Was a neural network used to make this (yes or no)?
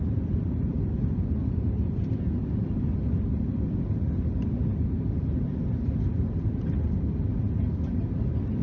no